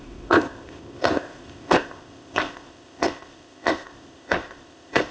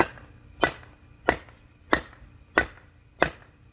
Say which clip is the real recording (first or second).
second